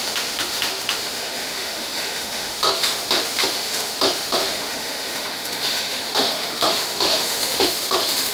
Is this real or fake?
fake